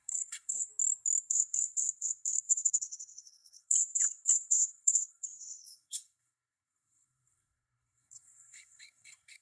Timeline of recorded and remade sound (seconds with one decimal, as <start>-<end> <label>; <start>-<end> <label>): 0.0-0.7 remade; 0.7-1.3 recorded; 1.3-9.4 remade

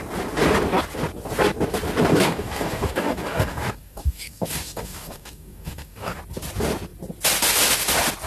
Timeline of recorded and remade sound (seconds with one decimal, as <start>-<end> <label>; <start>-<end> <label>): 0.0-2.1 recorded; 2.1-6.2 remade; 6.2-8.3 recorded

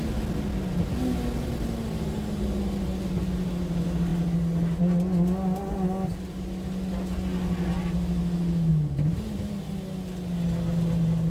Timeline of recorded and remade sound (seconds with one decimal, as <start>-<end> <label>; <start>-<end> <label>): 0.0-11.3 recorded

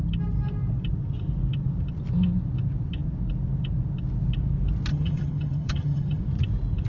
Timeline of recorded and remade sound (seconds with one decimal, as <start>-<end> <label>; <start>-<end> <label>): 0.0-4.9 recorded; 4.9-6.2 remade; 6.2-6.9 recorded